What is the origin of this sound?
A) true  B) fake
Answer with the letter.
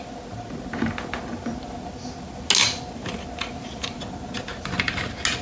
A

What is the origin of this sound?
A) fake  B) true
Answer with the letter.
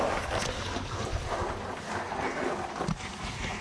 B